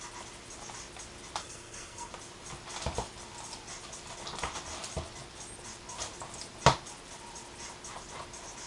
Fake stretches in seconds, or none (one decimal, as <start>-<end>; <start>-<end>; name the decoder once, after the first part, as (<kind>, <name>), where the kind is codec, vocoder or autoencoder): 1.4-2.1 (codec, SNAC)